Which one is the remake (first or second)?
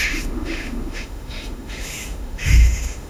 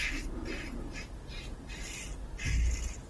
first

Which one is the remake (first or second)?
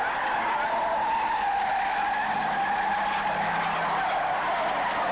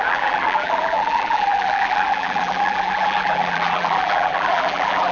second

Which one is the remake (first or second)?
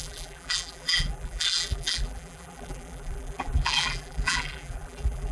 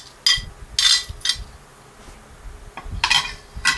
first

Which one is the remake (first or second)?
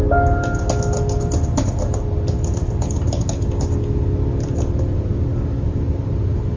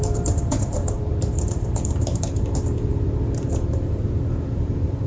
second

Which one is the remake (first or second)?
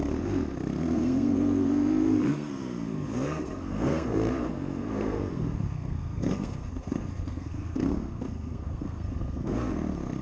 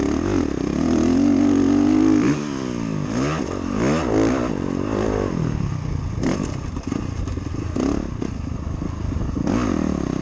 first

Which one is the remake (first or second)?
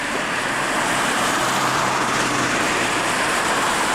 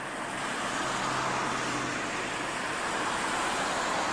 first